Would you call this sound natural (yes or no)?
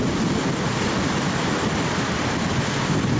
yes